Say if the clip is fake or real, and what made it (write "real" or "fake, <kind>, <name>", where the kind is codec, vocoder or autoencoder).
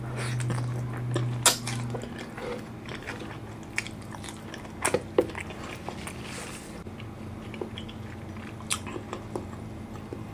real